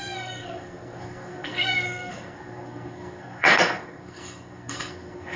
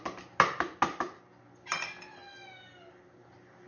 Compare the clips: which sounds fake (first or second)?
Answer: first